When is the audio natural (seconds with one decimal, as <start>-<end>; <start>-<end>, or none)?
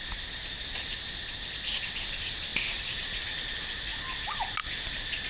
0.0-5.3